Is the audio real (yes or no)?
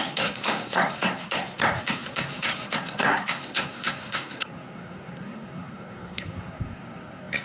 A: no